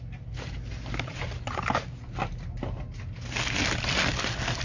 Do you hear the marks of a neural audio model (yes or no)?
no